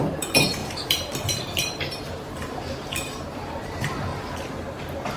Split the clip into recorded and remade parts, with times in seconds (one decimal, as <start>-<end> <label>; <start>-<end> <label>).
0.0-4.1 remade; 4.1-5.2 recorded